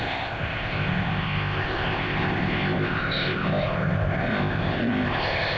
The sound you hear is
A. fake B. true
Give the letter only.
A